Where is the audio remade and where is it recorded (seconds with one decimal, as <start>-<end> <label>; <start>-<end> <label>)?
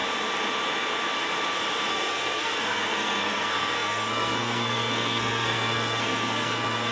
0.0-1.9 recorded; 1.9-6.9 remade